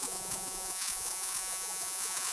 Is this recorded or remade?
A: remade